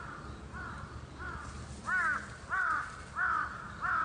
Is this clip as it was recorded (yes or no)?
yes